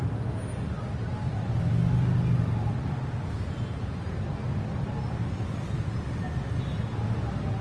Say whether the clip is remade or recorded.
recorded